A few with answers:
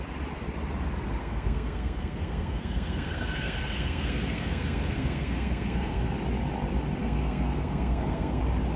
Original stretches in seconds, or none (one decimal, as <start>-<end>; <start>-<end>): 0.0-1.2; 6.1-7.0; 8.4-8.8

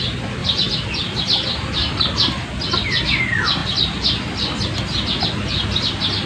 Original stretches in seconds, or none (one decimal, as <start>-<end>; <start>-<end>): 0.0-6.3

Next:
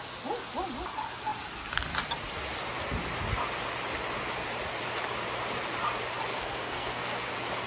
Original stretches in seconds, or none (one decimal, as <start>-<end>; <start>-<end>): 0.0-6.3; 7.3-7.7

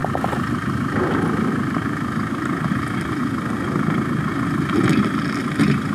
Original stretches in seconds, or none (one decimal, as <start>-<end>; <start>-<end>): 0.0-5.9